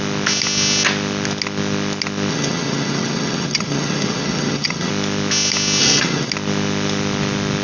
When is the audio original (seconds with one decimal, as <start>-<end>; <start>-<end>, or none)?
0.0-2.3; 4.9-5.8; 6.3-7.6